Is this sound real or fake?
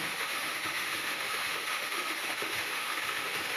fake